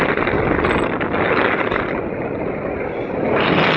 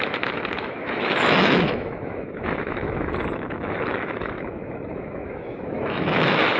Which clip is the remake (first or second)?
second